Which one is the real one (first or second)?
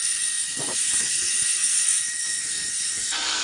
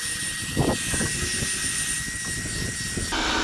second